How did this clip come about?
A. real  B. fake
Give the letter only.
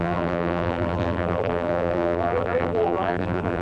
B